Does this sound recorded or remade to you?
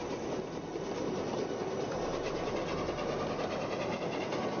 recorded